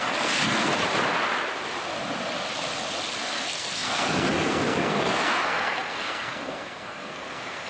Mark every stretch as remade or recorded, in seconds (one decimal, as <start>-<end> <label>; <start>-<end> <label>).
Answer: 0.0-0.7 remade; 0.7-3.2 recorded; 3.2-7.7 remade